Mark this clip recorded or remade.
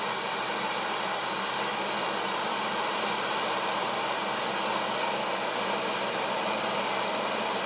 recorded